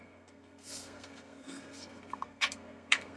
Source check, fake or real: fake